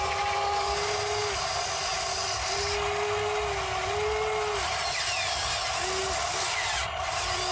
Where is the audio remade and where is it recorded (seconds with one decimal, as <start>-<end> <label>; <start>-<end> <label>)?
0.0-7.5 recorded